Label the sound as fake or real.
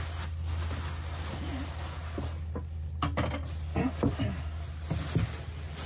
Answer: real